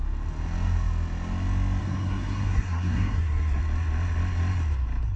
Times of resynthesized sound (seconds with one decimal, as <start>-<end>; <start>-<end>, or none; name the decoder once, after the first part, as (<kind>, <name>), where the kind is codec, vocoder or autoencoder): 1.8-3.6 (codec, SNAC)